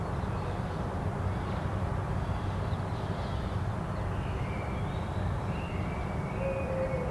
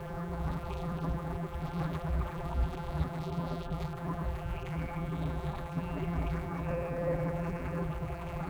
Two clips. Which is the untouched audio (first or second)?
first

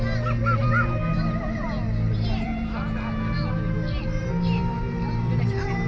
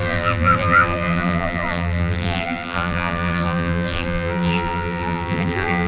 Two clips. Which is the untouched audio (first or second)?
first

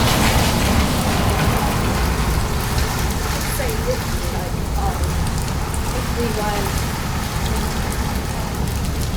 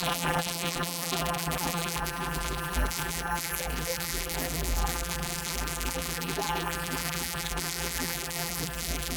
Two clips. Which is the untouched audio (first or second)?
first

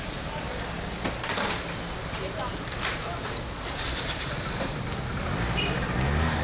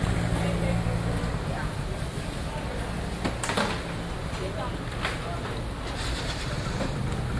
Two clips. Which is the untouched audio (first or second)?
second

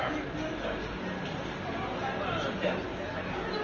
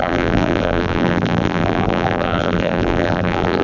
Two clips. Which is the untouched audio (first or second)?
first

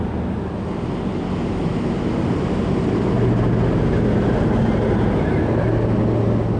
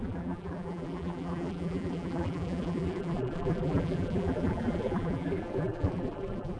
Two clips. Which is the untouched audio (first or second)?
first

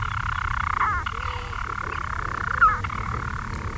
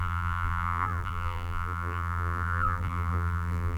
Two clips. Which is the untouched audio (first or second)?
first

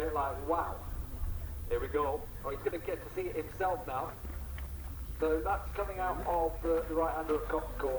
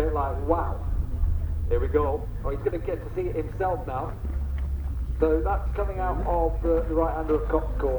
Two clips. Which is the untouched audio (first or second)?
second